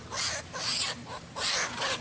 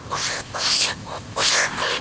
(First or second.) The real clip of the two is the first